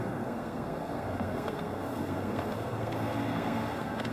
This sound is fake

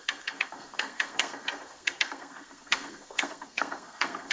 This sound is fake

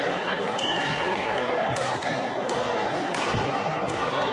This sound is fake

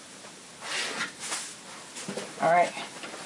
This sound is real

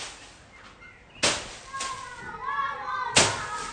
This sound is real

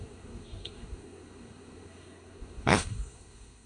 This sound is fake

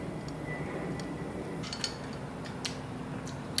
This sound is real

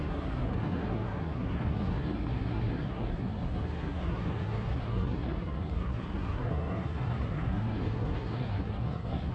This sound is fake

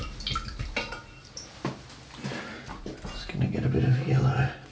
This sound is real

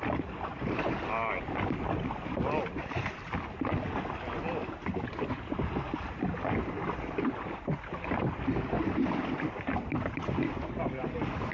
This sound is real